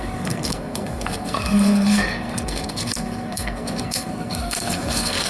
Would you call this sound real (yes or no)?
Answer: no